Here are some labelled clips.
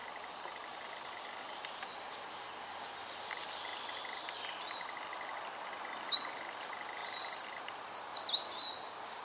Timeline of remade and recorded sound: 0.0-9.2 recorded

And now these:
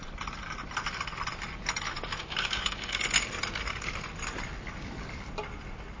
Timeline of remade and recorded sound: 0.0-2.2 recorded; 2.2-3.0 remade; 3.0-6.0 recorded

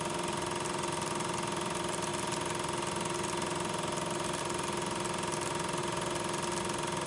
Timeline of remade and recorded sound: 0.0-7.1 recorded

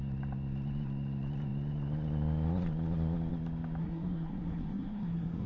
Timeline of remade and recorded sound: 0.0-3.8 recorded; 3.8-5.5 remade

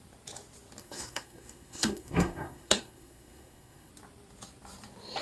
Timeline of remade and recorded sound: 0.0-0.8 recorded; 0.8-3.9 remade; 3.9-5.2 recorded

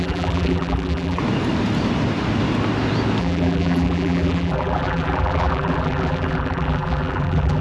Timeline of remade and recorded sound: 0.0-1.2 remade; 1.2-3.2 recorded; 3.2-7.6 remade